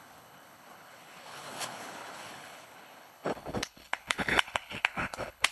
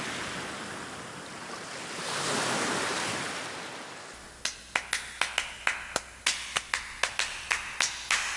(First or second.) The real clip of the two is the second